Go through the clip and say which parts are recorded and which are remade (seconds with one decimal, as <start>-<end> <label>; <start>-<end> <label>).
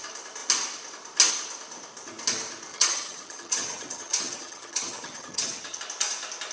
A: 0.0-2.7 recorded; 2.7-5.8 remade; 5.8-6.5 recorded